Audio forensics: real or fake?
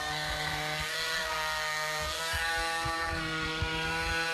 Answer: fake